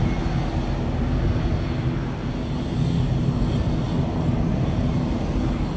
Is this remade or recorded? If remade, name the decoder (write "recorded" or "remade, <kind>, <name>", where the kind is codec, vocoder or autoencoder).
recorded